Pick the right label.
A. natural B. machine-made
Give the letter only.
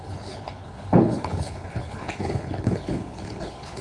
B